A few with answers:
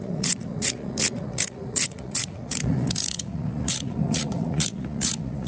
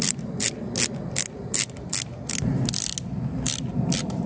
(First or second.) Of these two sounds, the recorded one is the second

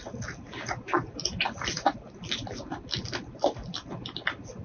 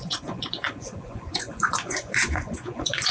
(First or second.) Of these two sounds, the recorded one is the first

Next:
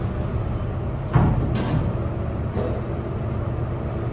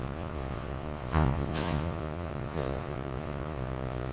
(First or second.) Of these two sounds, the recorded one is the first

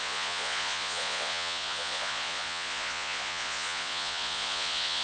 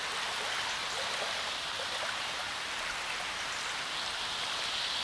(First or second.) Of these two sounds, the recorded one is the second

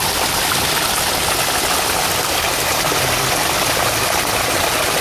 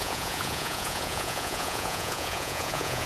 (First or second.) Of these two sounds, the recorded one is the first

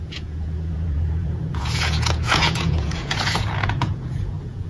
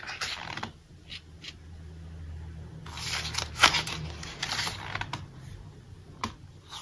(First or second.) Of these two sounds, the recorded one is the second